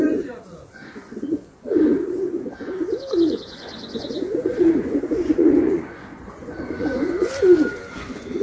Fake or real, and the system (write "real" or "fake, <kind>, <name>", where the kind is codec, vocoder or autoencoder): fake, vocoder, Vocos